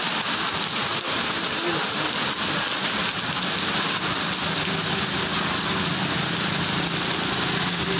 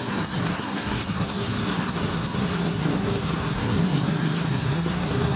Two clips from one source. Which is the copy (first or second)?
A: second